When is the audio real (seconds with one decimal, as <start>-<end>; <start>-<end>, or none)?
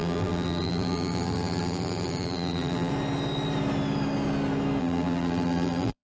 2.9-4.8